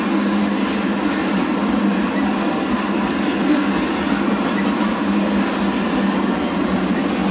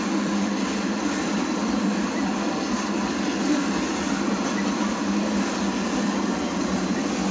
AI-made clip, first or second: second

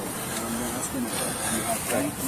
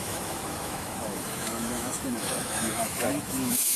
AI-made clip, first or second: second